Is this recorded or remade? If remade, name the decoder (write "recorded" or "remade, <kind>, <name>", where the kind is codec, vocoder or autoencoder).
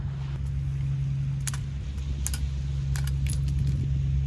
recorded